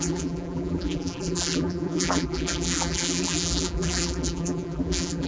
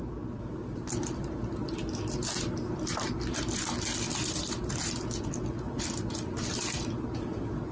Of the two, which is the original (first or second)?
second